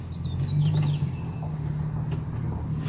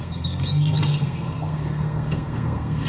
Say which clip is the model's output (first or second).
second